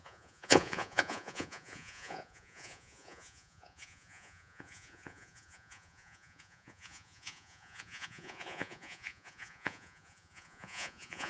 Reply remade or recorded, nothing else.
remade